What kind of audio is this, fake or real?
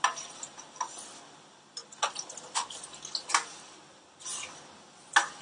real